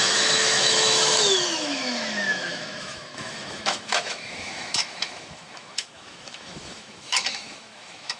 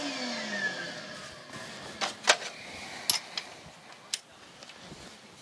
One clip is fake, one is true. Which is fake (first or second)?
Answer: first